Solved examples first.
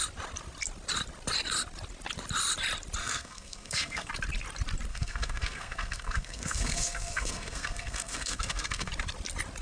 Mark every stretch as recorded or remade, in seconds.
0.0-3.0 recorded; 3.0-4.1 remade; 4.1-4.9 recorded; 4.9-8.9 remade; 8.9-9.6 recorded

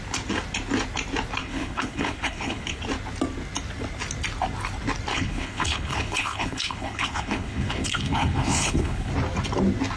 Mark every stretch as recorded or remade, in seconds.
0.0-1.4 recorded; 1.4-2.8 remade; 2.8-5.1 recorded; 5.1-9.1 remade; 9.1-10.0 recorded

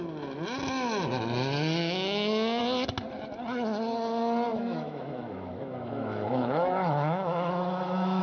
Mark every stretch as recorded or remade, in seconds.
0.0-1.8 recorded; 1.8-2.6 remade; 2.6-4.5 recorded; 4.5-8.2 remade

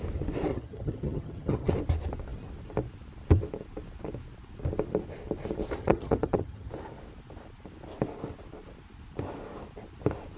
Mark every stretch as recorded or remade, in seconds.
0.0-0.5 recorded; 0.5-1.7 remade; 1.7-5.8 recorded; 5.8-6.7 remade; 6.7-10.4 recorded

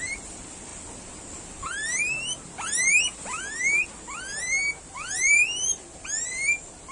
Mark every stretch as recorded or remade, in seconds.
0.0-0.7 remade; 0.7-4.8 recorded; 4.8-6.9 remade

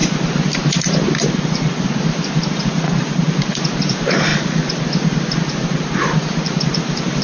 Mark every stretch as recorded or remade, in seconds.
0.0-1.2 recorded; 1.2-4.3 remade; 4.3-5.5 recorded; 5.5-7.2 remade

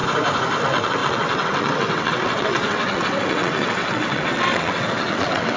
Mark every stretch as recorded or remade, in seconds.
0.0-0.6 recorded; 0.6-5.6 remade

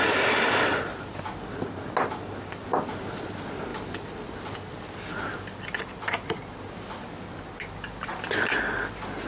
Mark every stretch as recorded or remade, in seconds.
0.0-9.3 recorded